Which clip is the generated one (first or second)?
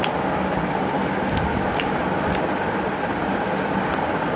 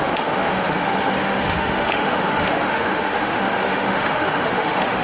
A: second